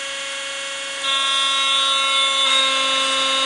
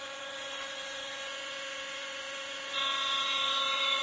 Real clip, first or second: first